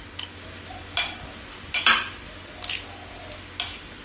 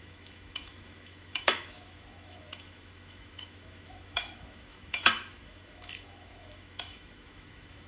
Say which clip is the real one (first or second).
first